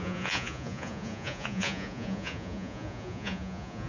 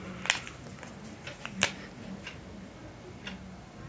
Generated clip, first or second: first